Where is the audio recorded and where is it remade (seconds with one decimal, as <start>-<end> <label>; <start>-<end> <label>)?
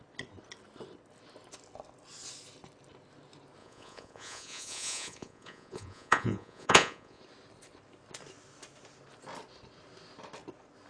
0.0-3.6 recorded; 3.6-7.2 remade; 7.2-10.9 recorded